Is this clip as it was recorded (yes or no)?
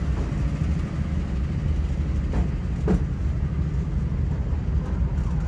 yes